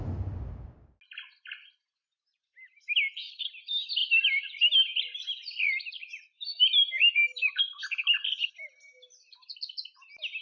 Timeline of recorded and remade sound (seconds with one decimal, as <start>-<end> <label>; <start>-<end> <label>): 0.0-4.0 recorded; 4.0-7.6 remade; 7.6-10.4 recorded